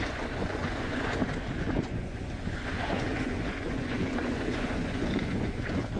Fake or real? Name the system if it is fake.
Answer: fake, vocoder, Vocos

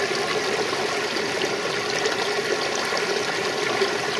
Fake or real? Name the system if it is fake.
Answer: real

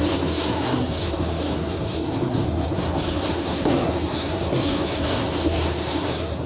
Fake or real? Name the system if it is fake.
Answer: fake, codec, SNAC